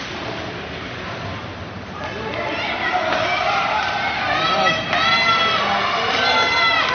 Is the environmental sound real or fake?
real